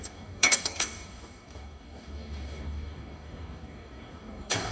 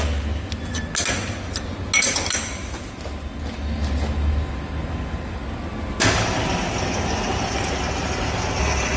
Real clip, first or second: second